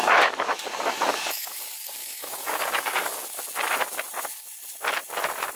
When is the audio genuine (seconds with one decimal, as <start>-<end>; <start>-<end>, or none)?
3.4-5.6